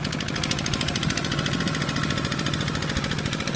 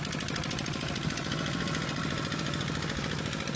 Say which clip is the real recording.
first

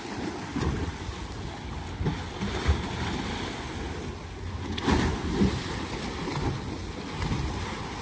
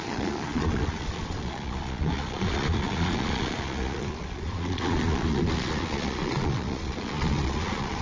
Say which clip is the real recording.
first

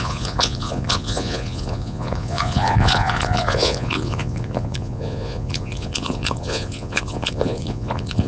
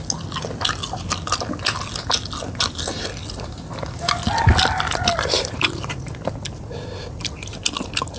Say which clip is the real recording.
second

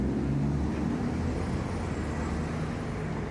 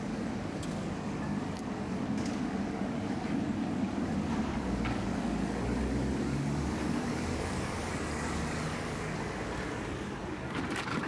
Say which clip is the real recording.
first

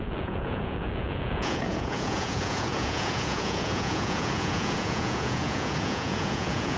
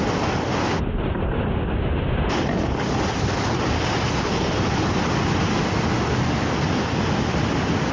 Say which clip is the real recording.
second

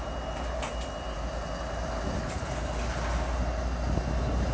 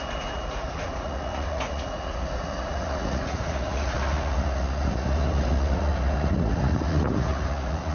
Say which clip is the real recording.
first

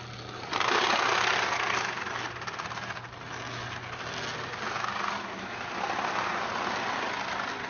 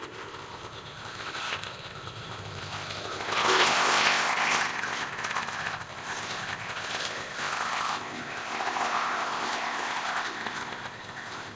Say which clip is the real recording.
first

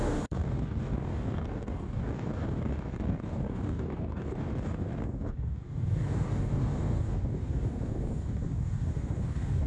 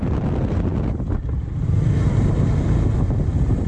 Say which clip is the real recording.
second